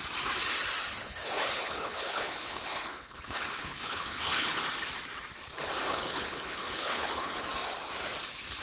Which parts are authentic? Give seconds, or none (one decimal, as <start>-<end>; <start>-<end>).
0.0-0.8; 4.6-5.9; 7.4-8.6